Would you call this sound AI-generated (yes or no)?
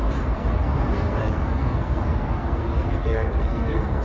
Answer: yes